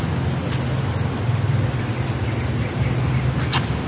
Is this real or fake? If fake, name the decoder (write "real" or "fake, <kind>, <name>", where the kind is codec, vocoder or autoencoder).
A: real